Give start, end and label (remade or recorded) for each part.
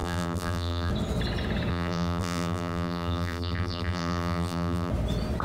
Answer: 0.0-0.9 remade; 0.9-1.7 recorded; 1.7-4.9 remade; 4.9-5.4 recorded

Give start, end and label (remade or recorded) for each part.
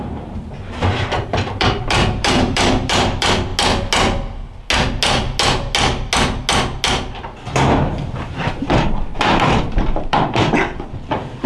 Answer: 0.0-3.5 remade; 3.5-8.2 recorded; 8.2-11.5 remade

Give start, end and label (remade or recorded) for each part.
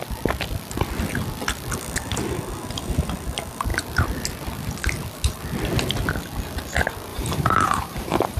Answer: 0.0-7.1 recorded; 7.1-8.4 remade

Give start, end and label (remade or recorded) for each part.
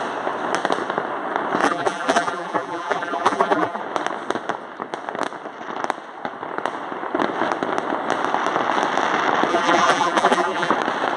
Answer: 0.0-1.6 recorded; 1.6-3.8 remade; 3.8-9.5 recorded; 9.5-10.7 remade; 10.7-11.2 recorded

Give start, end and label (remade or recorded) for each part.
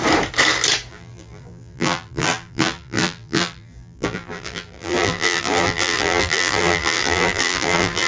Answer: 0.0-0.9 recorded; 0.9-8.1 remade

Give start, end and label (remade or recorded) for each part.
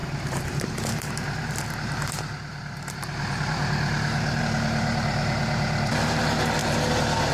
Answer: 0.0-6.6 remade; 6.6-7.3 recorded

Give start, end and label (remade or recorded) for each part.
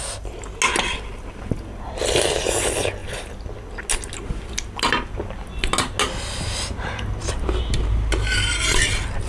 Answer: 0.0-9.3 recorded